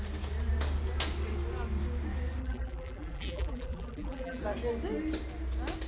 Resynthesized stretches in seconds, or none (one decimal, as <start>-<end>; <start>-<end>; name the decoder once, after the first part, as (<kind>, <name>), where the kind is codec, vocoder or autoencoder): 2.4-4.4 (vocoder, BigVGAN v2)